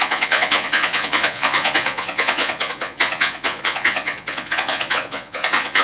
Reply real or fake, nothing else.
fake